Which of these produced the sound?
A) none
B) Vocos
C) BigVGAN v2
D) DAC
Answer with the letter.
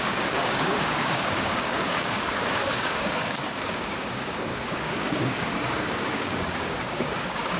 D